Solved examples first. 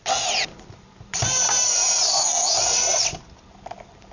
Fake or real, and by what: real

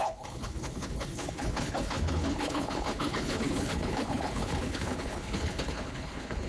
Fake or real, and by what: fake, codec, HILCodec